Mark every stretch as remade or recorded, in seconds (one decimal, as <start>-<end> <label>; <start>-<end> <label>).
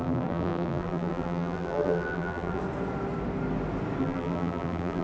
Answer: 0.0-2.6 remade; 2.6-4.0 recorded; 4.0-5.0 remade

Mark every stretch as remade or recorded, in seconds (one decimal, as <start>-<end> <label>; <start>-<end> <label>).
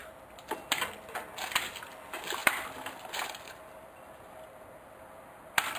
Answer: 0.0-5.8 recorded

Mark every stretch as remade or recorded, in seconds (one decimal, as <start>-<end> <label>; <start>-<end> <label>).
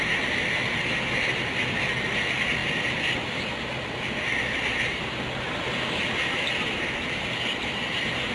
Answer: 0.0-8.3 recorded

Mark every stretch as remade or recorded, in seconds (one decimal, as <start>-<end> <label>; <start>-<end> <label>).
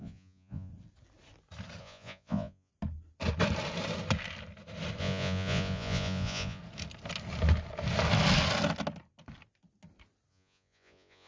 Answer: 0.0-0.7 remade; 0.7-1.8 recorded; 1.8-2.7 remade; 2.7-5.0 recorded; 5.0-6.6 remade; 6.6-10.3 recorded; 10.3-11.3 remade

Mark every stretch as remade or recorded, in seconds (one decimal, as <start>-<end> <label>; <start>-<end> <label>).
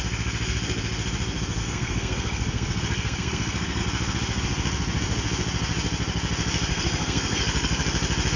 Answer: 0.0-1.6 recorded; 1.6-3.8 remade; 3.8-6.7 recorded; 6.7-7.8 remade; 7.8-8.4 recorded